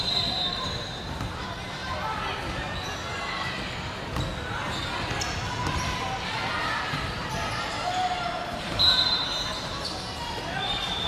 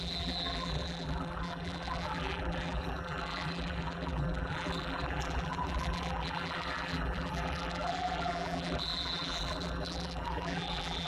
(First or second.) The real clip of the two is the first